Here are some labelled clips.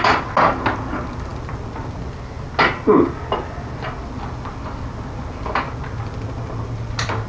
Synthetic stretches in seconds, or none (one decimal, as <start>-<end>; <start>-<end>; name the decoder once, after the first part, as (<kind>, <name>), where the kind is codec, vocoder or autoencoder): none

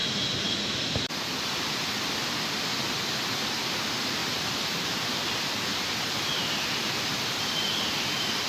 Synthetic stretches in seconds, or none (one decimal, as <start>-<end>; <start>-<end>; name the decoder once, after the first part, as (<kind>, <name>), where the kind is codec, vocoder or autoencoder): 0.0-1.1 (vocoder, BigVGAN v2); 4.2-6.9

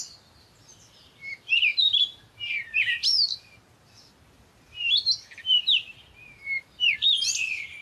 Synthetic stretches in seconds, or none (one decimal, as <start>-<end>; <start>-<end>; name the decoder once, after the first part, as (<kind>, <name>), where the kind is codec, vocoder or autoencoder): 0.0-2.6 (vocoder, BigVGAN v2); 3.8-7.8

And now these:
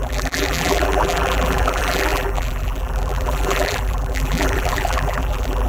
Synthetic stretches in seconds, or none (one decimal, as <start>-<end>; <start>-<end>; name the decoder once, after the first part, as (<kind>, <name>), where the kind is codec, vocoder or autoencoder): 0.0-5.7 (vocoder, BigVGAN v2)

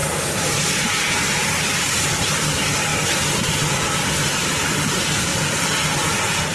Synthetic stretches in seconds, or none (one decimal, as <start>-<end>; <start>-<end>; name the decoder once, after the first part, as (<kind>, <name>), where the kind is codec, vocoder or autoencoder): 0.0-2.9 (vocoder, BigVGAN v2); 3.7-5.3

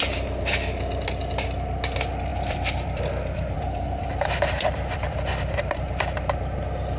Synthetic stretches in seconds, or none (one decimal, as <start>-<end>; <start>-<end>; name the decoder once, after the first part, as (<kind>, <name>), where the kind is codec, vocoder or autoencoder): 2.3-5.6 (vocoder, BigVGAN v2)

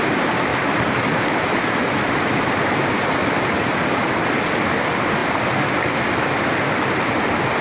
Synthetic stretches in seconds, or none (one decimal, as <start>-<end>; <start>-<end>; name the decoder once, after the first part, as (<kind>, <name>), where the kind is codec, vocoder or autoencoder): 0.5-4.1 (vocoder, BigVGAN v2)